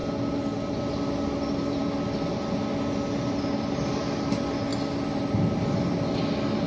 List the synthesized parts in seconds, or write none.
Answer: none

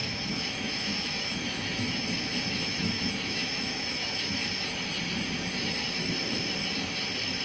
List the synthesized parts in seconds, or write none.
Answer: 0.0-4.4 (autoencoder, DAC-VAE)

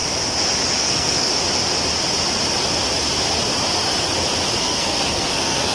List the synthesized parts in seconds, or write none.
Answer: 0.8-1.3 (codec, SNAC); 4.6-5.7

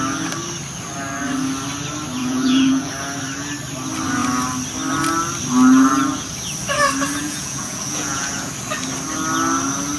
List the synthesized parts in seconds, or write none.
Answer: 2.2-2.9 (vocoder, Vocos); 7.2-8.5

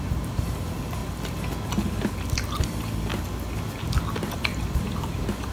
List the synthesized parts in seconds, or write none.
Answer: 0.0-1.0 (vocoder, BigVGAN v2); 4.3-5.5

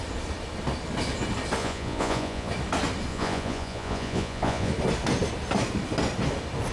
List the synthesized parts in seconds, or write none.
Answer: 1.6-2.5 (vocoder, Vocos); 3.1-4.7

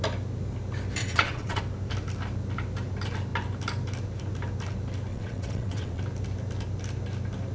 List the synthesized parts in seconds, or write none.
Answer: 1.0-1.6 (vocoder, WaveNeXt); 5.1-6.0